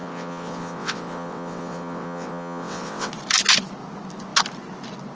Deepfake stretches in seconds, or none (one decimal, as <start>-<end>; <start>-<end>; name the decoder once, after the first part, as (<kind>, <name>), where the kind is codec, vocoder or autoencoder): 0.0-3.1 (vocoder, WaveNeXt)